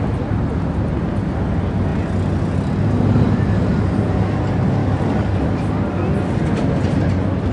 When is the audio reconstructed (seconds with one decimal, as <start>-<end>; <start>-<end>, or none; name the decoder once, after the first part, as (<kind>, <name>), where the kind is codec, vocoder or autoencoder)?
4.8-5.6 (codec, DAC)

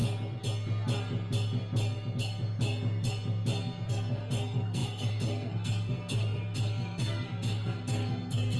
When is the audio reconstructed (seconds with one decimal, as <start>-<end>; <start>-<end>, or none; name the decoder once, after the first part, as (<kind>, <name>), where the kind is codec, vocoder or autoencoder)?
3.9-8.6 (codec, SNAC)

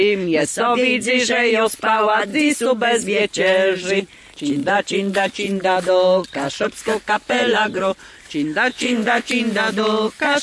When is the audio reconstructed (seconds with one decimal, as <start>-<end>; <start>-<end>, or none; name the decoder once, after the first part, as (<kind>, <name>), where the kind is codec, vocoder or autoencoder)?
8.7-9.3 (vocoder, Vocos)